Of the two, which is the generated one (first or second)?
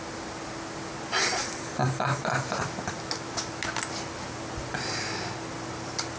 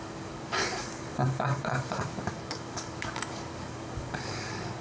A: second